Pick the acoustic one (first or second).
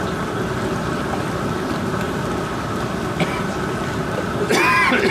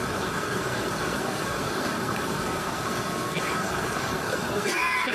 first